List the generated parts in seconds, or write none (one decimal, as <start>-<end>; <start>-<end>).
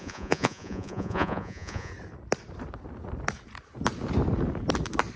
0.0-1.9